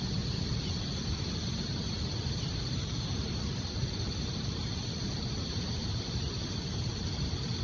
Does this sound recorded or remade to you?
remade